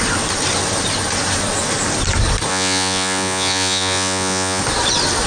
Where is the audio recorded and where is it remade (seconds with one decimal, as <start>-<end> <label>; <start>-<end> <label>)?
0.0-2.5 recorded; 2.5-4.6 remade; 4.6-5.3 recorded